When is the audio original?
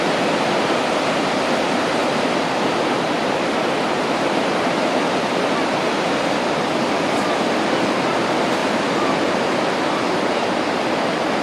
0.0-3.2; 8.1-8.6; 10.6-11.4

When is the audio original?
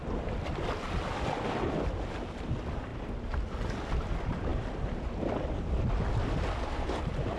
0.8-2.9; 3.8-4.5; 5.1-7.4